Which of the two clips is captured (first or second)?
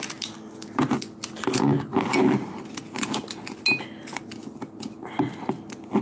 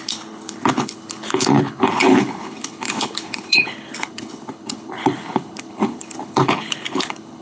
first